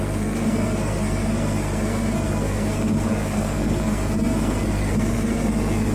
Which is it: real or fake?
fake